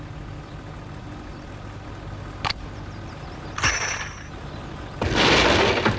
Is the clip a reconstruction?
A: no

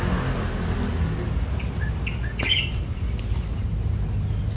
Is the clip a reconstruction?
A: no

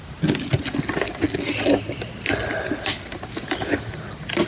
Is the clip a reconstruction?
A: no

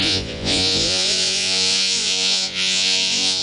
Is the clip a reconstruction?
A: yes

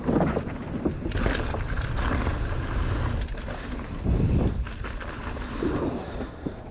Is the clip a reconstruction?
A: no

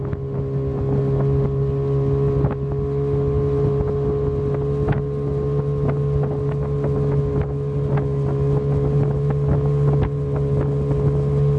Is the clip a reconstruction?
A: no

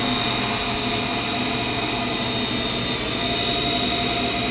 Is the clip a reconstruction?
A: no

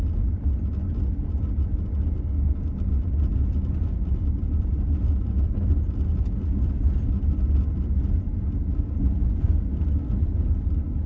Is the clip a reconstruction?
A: no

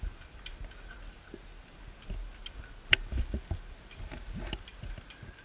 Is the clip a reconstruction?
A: no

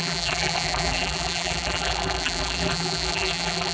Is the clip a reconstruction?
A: yes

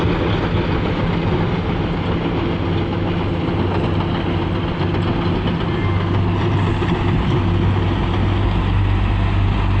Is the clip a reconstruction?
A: no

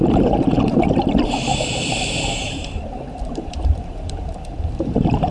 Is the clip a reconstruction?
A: yes